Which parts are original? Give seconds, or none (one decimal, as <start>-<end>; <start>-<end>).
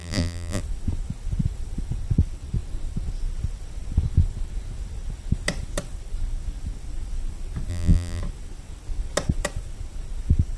0.6-7.7; 8.2-10.6